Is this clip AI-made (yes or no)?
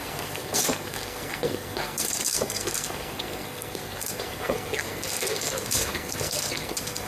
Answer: yes